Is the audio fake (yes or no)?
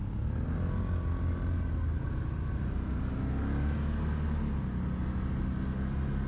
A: no